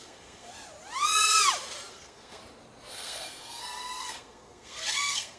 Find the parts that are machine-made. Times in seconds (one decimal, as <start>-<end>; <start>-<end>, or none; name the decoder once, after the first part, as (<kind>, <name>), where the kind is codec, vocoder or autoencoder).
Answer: 0.0-0.5 (codec, SNAC); 1.9-2.4; 2.9-5.4